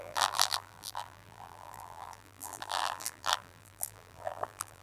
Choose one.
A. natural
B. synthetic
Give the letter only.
B